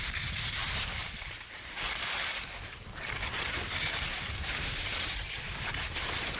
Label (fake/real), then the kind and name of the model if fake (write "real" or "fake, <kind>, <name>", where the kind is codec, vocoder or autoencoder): fake, vocoder, BigVGAN v2